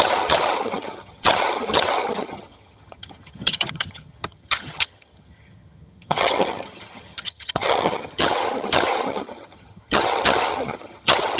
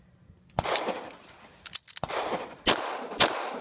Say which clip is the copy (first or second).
first